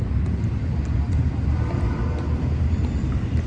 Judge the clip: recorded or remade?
recorded